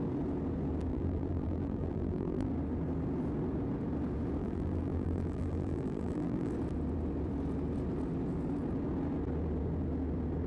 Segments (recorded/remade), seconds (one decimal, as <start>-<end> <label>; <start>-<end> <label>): 0.0-0.9 recorded; 0.9-2.5 remade; 2.5-4.4 recorded; 4.4-6.5 remade; 6.5-10.5 recorded